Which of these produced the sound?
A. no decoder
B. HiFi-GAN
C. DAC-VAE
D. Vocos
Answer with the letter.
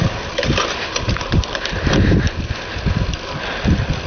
A